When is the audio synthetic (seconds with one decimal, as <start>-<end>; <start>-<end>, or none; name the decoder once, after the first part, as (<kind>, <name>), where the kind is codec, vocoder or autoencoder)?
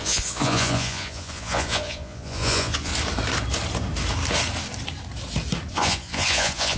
0.0-2.9 (vocoder, Vocos); 5.7-6.8